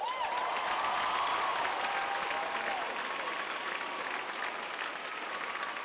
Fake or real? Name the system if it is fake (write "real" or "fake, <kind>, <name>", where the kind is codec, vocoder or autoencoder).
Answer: real